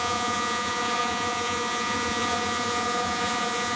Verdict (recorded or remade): remade